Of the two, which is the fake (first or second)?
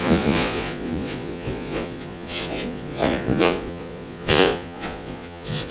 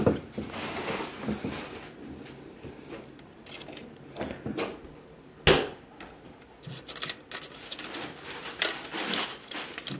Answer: first